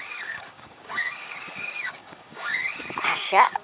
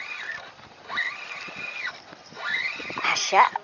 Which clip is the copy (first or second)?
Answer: first